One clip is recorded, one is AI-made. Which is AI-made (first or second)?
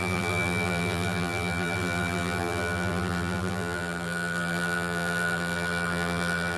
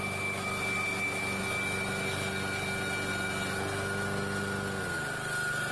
first